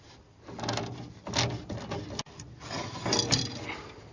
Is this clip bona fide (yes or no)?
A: yes